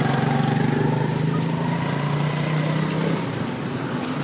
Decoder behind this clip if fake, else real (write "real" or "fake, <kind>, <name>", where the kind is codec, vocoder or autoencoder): real